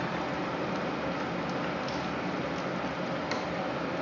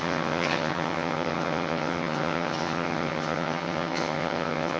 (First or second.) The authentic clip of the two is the first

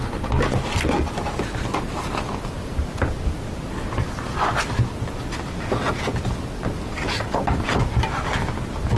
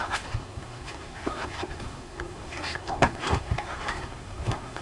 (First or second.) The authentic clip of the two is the first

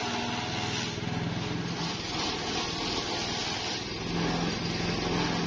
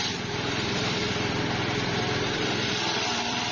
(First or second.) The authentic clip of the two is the first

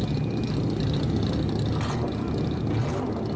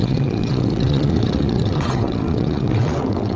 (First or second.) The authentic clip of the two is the first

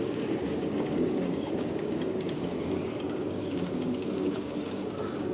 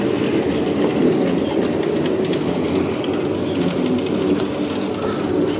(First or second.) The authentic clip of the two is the second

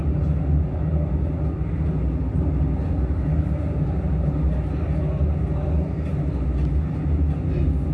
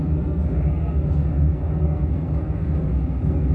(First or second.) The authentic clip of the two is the first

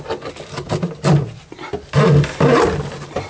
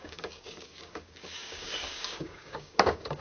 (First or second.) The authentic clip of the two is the first